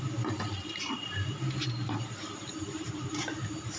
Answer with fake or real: fake